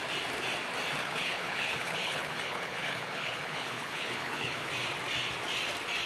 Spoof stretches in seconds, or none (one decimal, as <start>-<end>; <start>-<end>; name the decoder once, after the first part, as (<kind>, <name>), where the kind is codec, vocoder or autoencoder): 1.0-4.7 (codec, HILCodec)